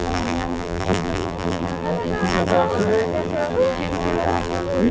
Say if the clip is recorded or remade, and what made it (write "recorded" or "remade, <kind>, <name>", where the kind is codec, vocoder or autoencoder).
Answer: remade, vocoder, BigVGAN v2